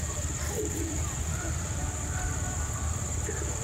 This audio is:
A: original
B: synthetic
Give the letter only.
B